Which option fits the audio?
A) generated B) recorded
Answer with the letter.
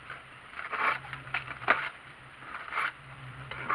A